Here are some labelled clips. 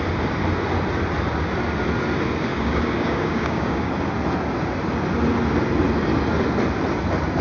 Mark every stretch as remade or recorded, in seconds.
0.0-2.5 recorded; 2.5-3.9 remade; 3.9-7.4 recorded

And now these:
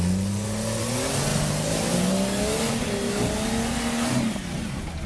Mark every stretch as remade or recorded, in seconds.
0.0-5.1 recorded

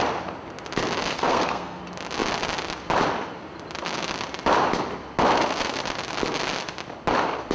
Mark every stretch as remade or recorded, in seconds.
0.0-1.1 recorded; 1.1-1.8 remade; 1.8-7.5 recorded

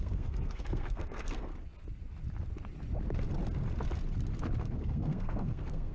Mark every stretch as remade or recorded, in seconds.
0.0-1.5 remade; 1.5-4.6 recorded; 4.6-5.9 remade

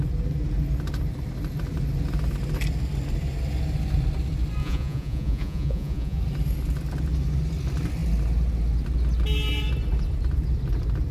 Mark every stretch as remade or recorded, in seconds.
0.0-4.6 recorded; 4.6-6.2 remade; 6.2-11.1 recorded

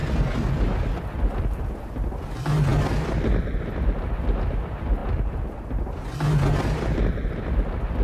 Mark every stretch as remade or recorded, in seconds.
0.0-8.0 recorded

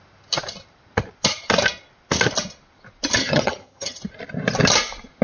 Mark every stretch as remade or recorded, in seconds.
0.0-3.2 recorded; 3.2-4.0 remade; 4.0-5.2 recorded